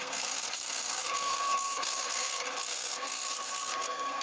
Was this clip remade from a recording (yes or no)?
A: yes